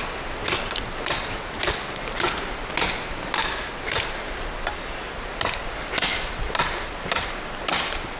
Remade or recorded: recorded